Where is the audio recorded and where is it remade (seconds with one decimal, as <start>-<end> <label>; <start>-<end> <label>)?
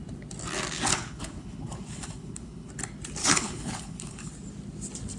0.0-0.9 recorded; 0.9-2.7 remade; 2.7-3.2 recorded; 3.2-4.3 remade; 4.3-5.2 recorded